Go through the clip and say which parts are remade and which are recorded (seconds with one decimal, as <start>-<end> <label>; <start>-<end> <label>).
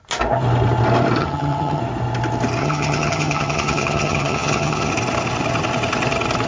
0.0-1.2 recorded; 1.2-1.8 remade; 1.8-2.6 recorded; 2.6-4.9 remade; 4.9-6.5 recorded